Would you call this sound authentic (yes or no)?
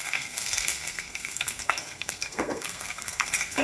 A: no